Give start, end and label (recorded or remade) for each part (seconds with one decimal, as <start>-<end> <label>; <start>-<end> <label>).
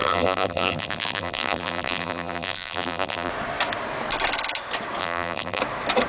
0.0-3.3 remade; 3.3-5.0 recorded; 5.0-5.6 remade; 5.6-6.1 recorded